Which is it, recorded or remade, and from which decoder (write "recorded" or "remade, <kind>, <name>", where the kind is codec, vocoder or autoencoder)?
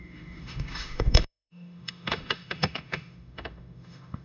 remade, autoencoder, DAC-VAE